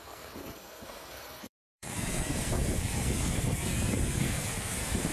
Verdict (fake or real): fake